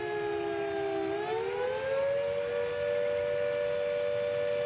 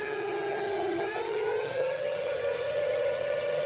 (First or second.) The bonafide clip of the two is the first